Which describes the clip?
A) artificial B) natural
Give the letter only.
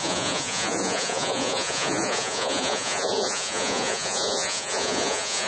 A